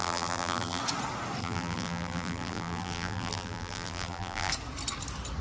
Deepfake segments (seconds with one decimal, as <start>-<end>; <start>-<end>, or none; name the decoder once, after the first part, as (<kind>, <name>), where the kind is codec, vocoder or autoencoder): 0.0-0.8 (vocoder, BigVGAN v2); 1.4-4.5